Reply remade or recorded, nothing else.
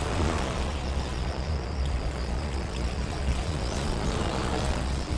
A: remade